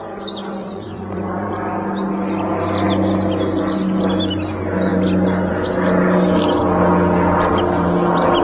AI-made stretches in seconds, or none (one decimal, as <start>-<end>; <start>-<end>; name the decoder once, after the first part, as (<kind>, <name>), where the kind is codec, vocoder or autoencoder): 0.6-1.5 (vocoder, Vocos)